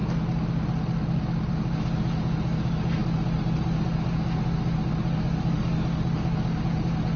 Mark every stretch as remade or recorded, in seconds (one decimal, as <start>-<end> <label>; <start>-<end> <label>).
0.0-7.2 recorded